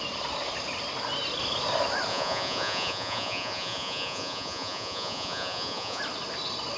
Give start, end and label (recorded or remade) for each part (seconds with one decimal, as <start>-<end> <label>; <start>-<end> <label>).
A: 0.0-2.1 recorded; 2.1-6.0 remade; 6.0-6.8 recorded